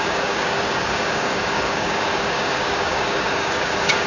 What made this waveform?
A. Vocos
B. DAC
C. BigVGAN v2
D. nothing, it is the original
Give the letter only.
B